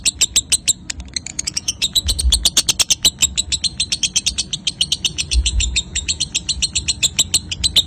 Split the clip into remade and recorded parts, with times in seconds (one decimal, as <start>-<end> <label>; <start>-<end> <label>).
0.0-1.3 recorded; 1.3-2.2 remade; 2.2-5.1 recorded; 5.1-6.2 remade; 6.2-7.9 recorded